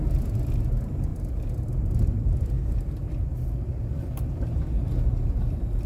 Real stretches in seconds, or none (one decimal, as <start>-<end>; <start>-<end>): 0.0-5.9